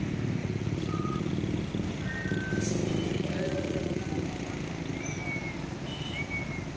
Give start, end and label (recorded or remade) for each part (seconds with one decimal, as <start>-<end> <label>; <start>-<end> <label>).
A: 0.0-0.4 recorded; 0.4-1.3 remade; 1.3-3.1 recorded; 3.1-4.0 remade; 4.0-6.8 recorded